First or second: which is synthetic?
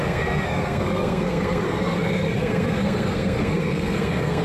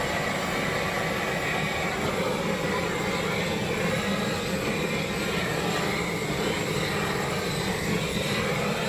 first